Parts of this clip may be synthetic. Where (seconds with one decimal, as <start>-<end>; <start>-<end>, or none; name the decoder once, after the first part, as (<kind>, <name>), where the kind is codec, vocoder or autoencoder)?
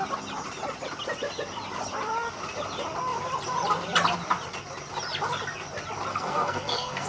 6.1-7.1 (codec, SNAC)